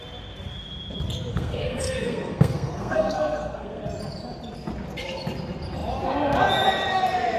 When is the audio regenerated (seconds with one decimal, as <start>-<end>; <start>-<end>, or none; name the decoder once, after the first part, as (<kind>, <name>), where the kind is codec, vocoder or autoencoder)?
1.3-3.8 (codec, SNAC)